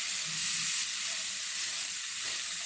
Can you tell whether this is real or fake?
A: fake